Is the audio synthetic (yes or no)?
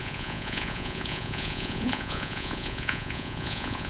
yes